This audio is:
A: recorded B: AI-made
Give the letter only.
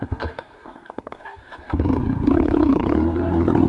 B